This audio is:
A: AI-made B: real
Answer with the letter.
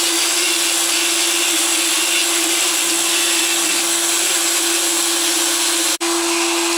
B